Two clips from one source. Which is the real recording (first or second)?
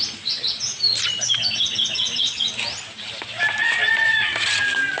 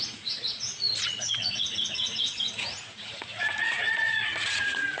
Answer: first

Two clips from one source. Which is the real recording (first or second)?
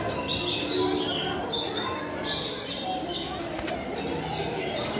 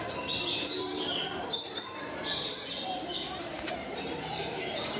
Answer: first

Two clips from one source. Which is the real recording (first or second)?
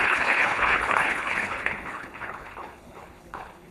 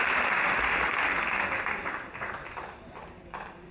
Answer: second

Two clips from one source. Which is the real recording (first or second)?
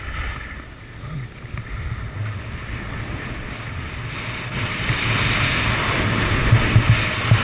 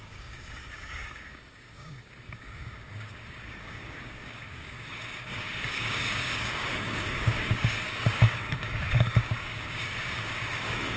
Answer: first